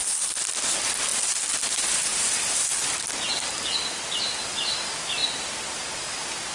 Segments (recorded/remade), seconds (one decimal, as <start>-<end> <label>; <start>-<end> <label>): 0.0-6.5 recorded